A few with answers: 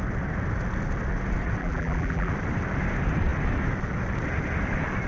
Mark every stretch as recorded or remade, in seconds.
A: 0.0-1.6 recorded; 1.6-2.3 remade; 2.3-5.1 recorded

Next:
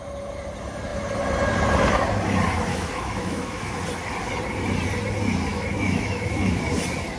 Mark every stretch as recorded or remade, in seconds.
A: 0.0-2.7 recorded; 2.7-3.8 remade; 3.8-5.5 recorded; 5.5-6.6 remade; 6.6-7.2 recorded